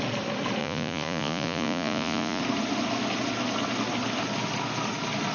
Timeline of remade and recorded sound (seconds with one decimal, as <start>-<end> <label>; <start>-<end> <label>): 0.0-0.6 recorded; 0.6-2.4 remade; 2.4-5.3 recorded